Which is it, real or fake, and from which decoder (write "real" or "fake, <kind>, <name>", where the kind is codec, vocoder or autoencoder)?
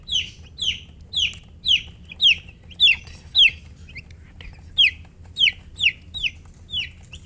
real